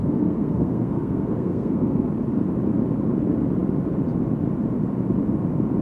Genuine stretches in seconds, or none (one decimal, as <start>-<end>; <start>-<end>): 2.1-5.8